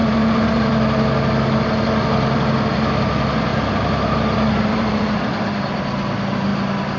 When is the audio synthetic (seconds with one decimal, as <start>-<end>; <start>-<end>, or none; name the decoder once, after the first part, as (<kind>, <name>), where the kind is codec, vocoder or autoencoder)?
0.0-0.7 (vocoder, BigVGAN v2); 3.5-5.2